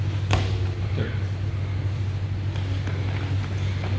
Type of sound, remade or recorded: recorded